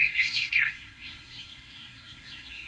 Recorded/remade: remade